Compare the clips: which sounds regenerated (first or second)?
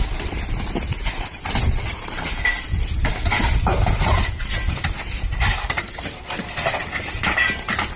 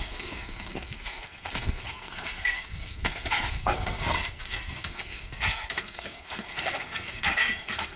second